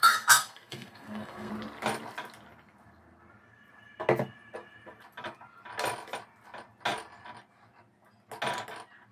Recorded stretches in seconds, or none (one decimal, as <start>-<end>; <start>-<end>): 1.5-9.1

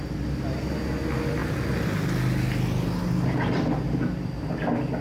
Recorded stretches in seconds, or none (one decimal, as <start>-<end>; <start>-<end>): 0.0-5.0

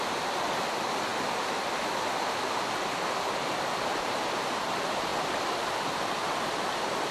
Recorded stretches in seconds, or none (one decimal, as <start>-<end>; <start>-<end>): 0.0-7.1

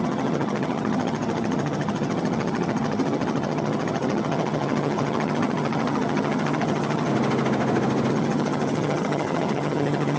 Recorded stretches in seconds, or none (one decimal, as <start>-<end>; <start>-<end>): 7.1-8.1